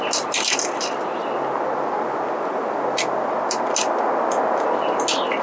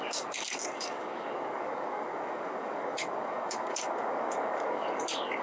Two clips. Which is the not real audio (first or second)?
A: second